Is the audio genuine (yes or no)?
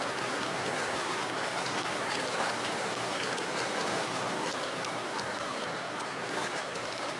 no